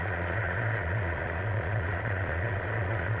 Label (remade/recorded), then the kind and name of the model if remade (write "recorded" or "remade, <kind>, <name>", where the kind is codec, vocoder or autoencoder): remade, vocoder, Vocos